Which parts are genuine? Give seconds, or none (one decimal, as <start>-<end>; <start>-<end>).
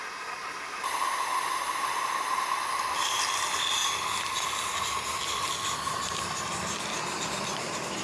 0.0-8.0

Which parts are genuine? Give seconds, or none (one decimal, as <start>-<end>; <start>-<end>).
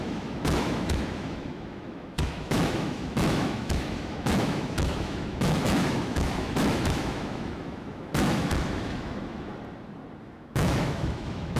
9.5-10.2